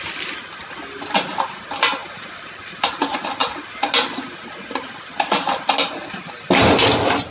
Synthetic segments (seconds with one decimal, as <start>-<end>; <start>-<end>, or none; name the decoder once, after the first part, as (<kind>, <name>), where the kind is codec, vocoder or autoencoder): 2.0-2.5 (vocoder, BigVGAN v2)